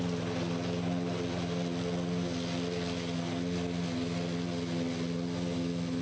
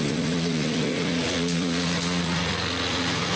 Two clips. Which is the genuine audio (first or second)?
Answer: first